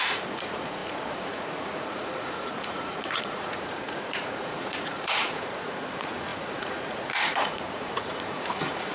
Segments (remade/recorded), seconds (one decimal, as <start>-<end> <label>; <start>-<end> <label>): 0.0-8.9 remade